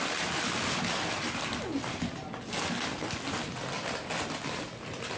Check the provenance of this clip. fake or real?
real